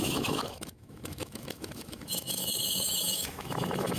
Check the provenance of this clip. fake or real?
fake